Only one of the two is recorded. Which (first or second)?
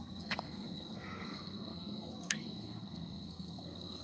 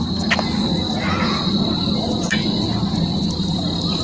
second